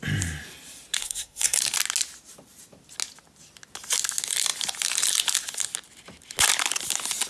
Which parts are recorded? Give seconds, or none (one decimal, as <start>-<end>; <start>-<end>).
0.0-1.0; 1.6-7.3